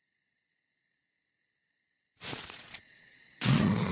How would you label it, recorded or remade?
remade